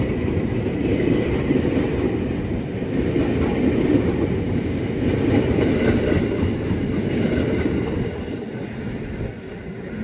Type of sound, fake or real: real